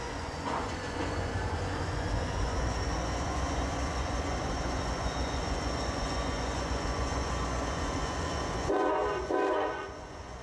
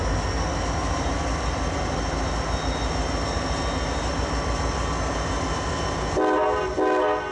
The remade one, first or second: first